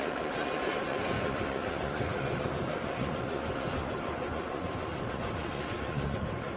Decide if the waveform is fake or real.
fake